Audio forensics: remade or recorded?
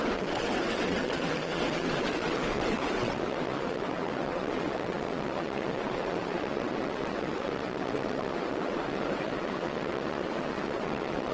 remade